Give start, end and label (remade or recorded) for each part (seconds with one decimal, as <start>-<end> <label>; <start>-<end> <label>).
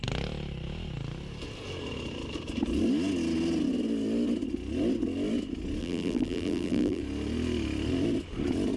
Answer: 0.0-5.8 recorded; 5.8-7.0 remade; 7.0-8.8 recorded